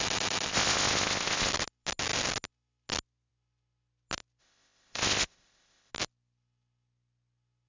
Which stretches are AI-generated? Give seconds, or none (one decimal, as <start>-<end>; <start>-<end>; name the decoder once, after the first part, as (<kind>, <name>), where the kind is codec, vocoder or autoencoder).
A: 0.5-1.5 (codec, ZipCodec); 4.4-5.9